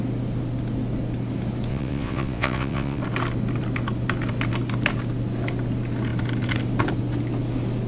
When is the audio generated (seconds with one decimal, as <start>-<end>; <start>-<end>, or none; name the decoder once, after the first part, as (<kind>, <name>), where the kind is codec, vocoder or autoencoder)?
1.7-3.0 (vocoder, WaveNeXt)